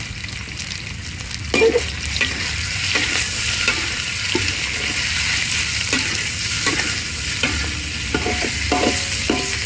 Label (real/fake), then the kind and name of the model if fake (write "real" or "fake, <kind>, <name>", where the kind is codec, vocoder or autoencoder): real